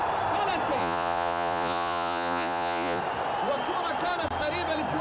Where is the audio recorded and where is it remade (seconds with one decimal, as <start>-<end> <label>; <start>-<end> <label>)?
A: 0.0-0.8 recorded; 0.8-3.0 remade; 3.0-5.0 recorded